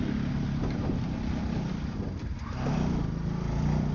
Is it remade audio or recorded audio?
remade